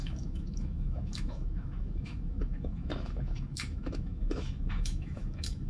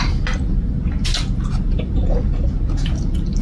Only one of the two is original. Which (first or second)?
second